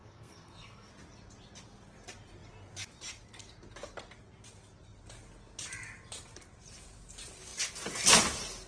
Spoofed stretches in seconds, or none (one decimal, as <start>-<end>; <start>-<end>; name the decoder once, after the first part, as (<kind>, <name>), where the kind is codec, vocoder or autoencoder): 0.0-0.9 (codec, SNAC)